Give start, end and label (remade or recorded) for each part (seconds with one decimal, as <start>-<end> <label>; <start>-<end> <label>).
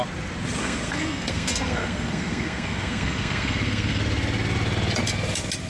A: 0.0-0.6 recorded; 0.6-4.0 remade; 4.0-5.7 recorded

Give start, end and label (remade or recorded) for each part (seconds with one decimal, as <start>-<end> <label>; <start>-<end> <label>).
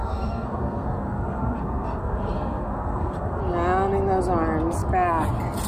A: 0.0-3.4 remade; 3.4-5.7 recorded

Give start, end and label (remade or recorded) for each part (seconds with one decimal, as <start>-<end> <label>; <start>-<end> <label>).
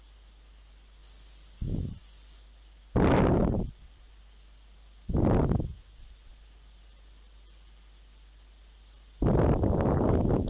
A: 0.0-10.5 recorded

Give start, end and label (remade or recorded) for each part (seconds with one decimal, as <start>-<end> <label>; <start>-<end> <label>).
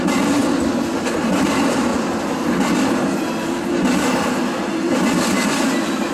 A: 0.0-6.1 recorded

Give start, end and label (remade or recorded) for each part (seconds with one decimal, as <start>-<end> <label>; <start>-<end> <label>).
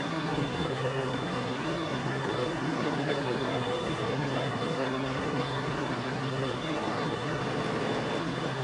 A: 0.0-7.4 remade; 7.4-8.2 recorded; 8.2-8.6 remade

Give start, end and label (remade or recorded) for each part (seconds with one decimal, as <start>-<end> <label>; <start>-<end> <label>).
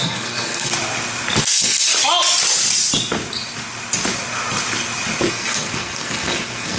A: 0.0-0.7 remade; 0.7-1.4 recorded; 1.4-1.9 remade; 1.9-5.3 recorded; 5.3-6.8 remade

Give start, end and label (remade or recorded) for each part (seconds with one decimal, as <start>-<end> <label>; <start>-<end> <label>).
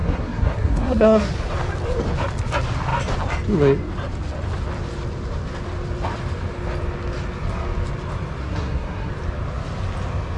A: 0.0-1.3 remade; 1.3-8.4 recorded; 8.4-9.1 remade; 9.1-10.4 recorded